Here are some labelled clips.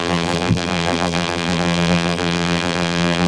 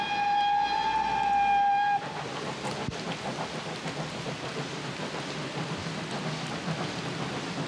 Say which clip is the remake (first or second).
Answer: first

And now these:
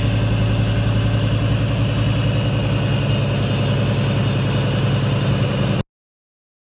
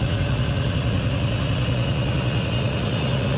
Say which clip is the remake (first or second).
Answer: second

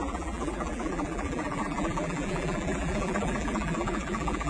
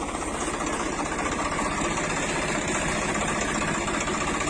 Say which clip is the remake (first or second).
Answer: first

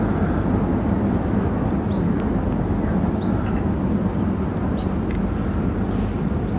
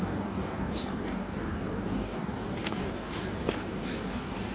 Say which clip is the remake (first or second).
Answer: second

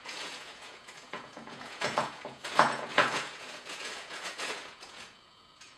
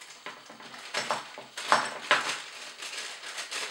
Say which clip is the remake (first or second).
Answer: first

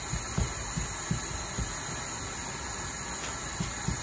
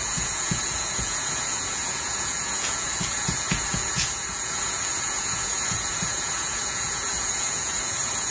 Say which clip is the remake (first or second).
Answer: second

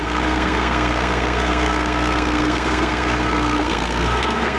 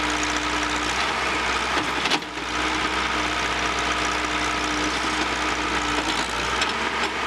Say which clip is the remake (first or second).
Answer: first